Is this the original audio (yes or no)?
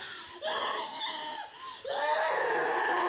yes